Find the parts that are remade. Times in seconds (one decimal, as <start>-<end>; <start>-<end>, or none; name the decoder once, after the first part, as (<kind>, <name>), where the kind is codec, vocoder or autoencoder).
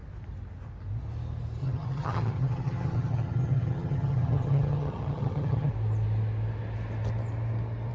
1.6-5.7 (vocoder, HiFi-GAN)